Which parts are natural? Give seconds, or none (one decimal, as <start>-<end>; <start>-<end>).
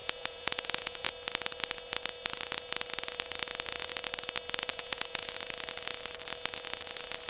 1.1-4.7; 5.3-7.3